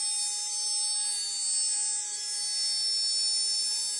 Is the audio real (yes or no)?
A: yes